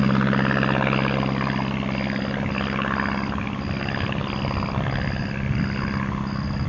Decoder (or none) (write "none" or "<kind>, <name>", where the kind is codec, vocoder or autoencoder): none